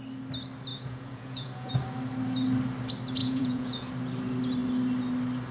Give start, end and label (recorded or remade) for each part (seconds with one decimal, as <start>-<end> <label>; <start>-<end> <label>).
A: 0.0-0.7 recorded; 0.7-1.7 remade; 1.7-3.2 recorded; 3.2-3.9 remade; 3.9-5.5 recorded